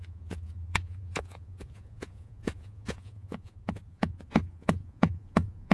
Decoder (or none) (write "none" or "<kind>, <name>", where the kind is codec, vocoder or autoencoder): vocoder, Vocos